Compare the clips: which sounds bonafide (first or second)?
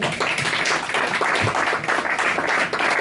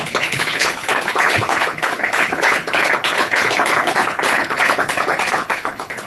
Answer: first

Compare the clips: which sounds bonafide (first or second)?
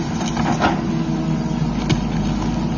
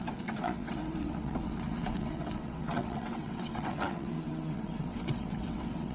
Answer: first